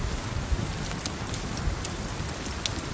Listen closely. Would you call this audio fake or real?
real